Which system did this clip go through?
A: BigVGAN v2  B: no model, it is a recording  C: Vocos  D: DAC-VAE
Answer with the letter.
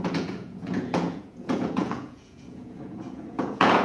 C